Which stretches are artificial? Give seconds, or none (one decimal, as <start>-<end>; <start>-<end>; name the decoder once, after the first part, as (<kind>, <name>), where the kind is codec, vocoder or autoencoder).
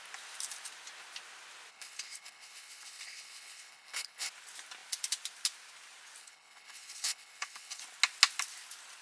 1.7-4.3 (codec, HILCodec); 6.2-7.8